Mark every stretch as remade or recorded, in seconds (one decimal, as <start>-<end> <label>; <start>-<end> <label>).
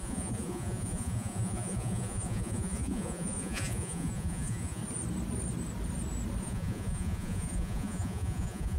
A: 0.0-4.8 remade; 4.8-6.4 recorded; 6.4-8.8 remade